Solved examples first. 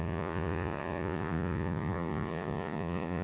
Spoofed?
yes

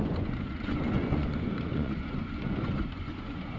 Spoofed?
yes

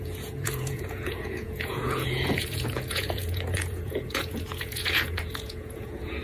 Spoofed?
yes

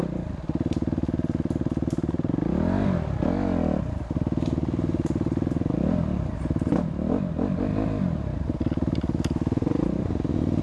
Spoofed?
no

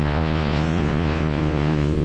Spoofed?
yes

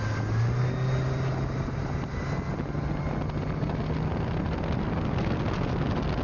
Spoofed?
no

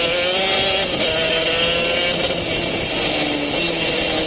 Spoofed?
no